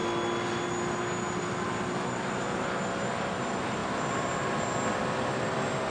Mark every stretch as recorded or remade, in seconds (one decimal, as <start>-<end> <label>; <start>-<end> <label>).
0.0-5.9 recorded